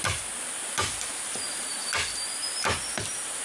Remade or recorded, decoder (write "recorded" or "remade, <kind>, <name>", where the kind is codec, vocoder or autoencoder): remade, vocoder, BigVGAN v2